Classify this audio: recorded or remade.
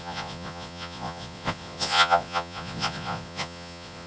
remade